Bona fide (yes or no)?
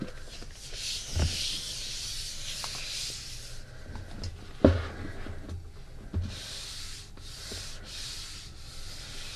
yes